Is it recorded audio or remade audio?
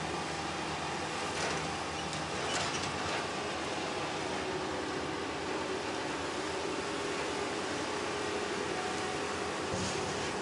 recorded